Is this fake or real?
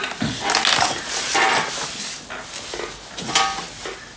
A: real